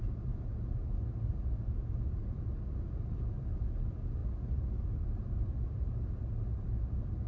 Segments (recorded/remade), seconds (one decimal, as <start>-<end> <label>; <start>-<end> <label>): 0.0-7.3 remade